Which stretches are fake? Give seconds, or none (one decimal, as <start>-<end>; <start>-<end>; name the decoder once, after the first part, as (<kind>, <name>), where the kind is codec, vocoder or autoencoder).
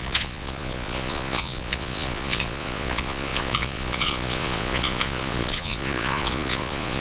0.0-7.0 (vocoder, Vocos)